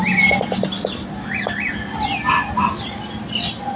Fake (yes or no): no